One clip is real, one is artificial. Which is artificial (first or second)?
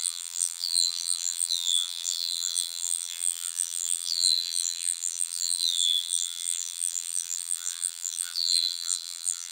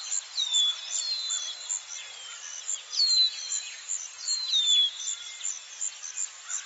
first